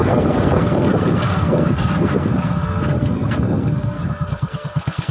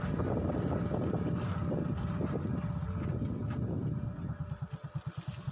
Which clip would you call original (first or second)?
second